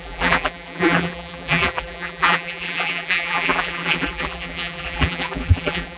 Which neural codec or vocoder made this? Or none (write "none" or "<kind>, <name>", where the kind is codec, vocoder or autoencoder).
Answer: vocoder, BigVGAN v2